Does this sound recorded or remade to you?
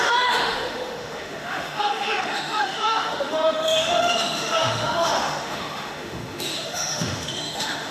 remade